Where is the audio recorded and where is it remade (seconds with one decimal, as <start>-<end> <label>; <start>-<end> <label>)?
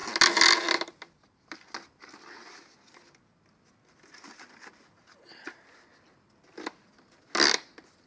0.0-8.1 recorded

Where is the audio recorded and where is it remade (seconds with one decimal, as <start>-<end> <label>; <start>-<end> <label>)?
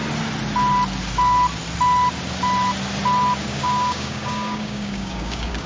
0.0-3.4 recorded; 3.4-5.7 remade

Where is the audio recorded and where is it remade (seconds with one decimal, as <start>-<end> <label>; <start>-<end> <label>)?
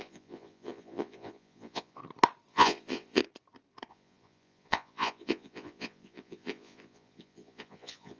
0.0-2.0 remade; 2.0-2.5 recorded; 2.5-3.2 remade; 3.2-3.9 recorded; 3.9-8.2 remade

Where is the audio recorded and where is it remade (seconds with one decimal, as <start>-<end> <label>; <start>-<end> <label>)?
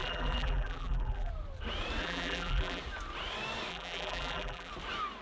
0.0-1.3 remade; 1.3-2.0 recorded; 2.0-2.8 remade; 2.8-3.7 recorded; 3.7-4.7 remade; 4.7-5.2 recorded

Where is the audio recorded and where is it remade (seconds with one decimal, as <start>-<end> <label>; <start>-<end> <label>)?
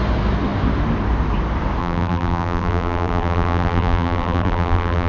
0.0-1.8 recorded; 1.8-5.1 remade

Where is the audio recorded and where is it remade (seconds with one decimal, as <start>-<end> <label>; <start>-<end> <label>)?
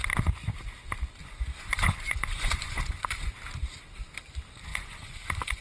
0.0-1.2 recorded; 1.2-3.3 remade; 3.3-4.7 recorded; 4.7-5.6 remade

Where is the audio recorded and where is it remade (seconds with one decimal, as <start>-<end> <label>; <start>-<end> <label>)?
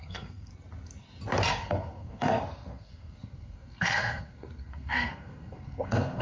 0.0-0.5 remade; 0.5-1.5 recorded; 1.5-6.2 remade